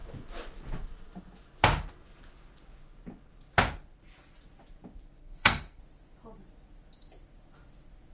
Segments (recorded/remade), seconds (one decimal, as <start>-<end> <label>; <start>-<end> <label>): 0.0-5.2 recorded; 5.2-5.8 remade; 5.8-8.1 recorded